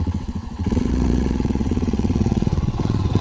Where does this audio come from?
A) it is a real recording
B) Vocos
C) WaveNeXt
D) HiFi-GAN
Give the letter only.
C